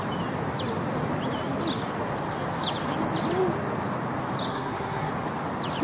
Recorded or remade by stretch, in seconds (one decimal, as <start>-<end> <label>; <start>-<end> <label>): 0.0-4.5 recorded; 4.5-5.1 remade; 5.1-5.8 recorded